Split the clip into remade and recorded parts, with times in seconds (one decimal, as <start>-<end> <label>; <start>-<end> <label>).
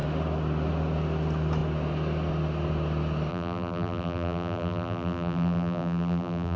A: 0.0-3.3 recorded; 3.3-6.6 remade